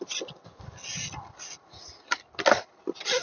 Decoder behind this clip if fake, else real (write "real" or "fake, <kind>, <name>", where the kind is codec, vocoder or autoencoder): real